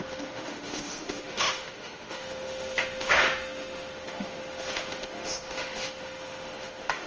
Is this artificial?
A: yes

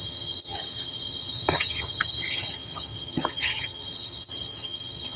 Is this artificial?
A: yes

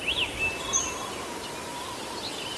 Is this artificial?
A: no